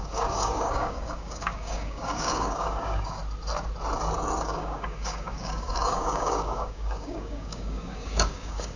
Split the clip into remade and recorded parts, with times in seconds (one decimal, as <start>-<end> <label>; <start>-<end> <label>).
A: 0.0-3.2 remade; 3.2-4.4 recorded; 4.4-8.8 remade